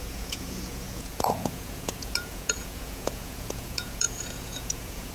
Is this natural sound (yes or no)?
no